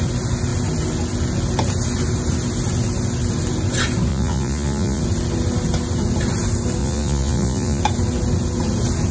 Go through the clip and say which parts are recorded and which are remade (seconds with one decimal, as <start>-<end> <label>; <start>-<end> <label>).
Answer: 0.0-4.1 recorded; 4.1-5.0 remade; 5.0-6.8 recorded; 6.8-7.8 remade; 7.8-9.1 recorded